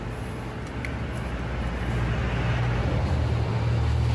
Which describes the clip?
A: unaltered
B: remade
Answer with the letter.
A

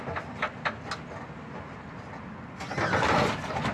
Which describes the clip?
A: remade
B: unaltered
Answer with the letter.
B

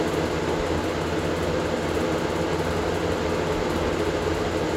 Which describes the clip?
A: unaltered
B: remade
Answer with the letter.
A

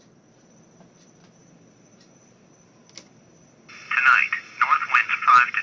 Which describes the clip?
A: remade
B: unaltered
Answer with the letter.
B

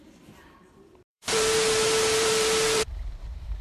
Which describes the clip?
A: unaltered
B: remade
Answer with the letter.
B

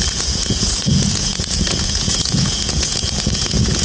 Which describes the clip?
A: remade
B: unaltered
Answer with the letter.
A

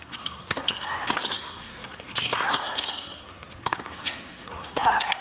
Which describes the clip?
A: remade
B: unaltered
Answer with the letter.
A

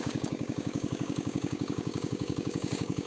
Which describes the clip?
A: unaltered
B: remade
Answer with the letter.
B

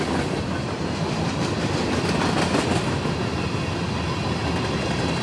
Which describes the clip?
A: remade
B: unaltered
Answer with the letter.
B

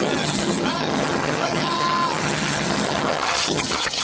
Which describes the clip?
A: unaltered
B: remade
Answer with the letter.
B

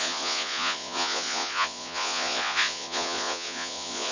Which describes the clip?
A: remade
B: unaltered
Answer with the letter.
A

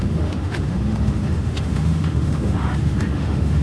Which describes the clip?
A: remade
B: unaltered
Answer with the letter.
A